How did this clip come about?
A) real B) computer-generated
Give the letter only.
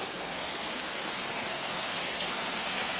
B